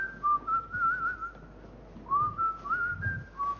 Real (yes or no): yes